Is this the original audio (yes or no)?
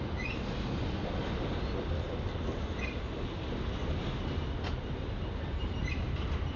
yes